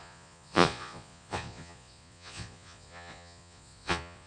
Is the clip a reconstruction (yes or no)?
yes